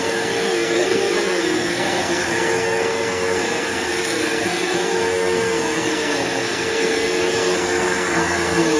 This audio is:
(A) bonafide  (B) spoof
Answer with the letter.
B